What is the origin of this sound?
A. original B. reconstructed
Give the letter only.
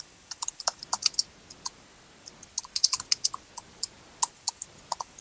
A